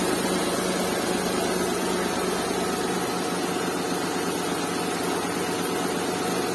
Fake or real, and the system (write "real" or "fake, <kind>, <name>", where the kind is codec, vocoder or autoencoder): real